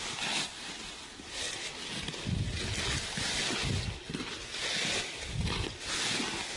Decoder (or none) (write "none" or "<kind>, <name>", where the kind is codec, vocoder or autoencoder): none